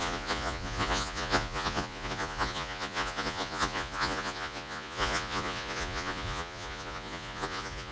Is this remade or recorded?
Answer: remade